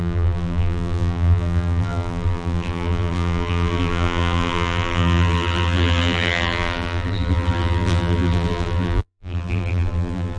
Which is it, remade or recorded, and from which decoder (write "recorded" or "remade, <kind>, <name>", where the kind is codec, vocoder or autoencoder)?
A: remade, vocoder, BigVGAN v2